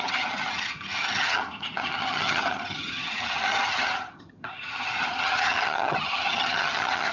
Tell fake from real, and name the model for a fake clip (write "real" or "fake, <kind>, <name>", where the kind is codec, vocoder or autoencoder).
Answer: fake, vocoder, HiFi-GAN